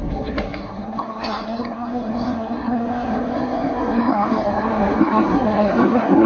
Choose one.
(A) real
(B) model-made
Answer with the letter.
B